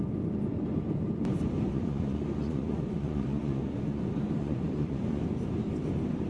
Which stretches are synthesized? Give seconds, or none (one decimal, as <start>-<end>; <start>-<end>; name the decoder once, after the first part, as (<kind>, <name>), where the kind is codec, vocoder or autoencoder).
1.7-4.0 (vocoder, Vocos); 4.4-5.2